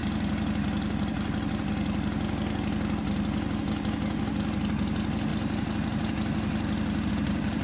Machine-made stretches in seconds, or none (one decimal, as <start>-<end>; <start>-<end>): none